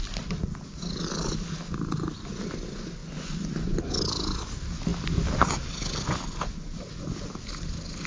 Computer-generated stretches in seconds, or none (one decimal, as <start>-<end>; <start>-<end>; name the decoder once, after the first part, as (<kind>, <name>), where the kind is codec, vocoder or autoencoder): 3.0-3.8 (vocoder, Vocos)